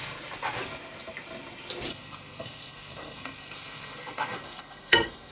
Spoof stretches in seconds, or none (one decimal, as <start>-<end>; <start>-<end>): 1.9-5.3